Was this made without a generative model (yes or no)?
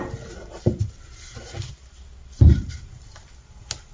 yes